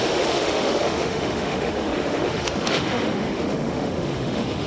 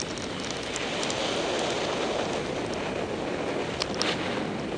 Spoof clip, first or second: first